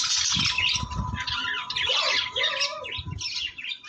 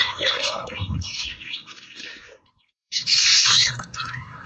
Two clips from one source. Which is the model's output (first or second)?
second